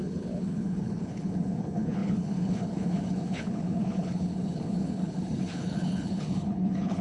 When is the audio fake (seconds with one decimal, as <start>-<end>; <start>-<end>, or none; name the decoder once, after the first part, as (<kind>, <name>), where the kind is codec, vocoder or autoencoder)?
0.0-7.0 (codec, HILCodec)

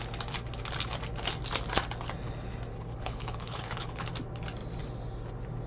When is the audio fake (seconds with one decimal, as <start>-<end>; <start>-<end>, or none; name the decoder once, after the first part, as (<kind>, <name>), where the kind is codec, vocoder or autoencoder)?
2.7-4.1 (codec, HILCodec)

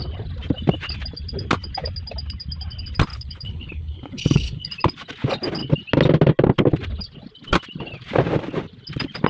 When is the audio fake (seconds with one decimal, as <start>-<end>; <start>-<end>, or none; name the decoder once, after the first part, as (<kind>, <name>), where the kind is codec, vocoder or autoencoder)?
3.1-4.7 (codec, HILCodec)

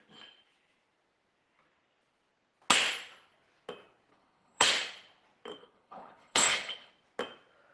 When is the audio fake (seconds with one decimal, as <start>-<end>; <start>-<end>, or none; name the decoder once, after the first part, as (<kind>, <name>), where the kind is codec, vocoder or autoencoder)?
4.1-4.7 (codec, HILCodec); 5.6-6.9

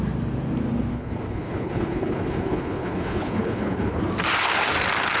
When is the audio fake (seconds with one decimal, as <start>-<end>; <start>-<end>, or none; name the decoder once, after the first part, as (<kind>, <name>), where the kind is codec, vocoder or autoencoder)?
0.9-4.0 (codec, HILCodec)